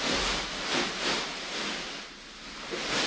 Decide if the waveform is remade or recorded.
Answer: recorded